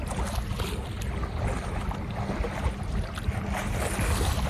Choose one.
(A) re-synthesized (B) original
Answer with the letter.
B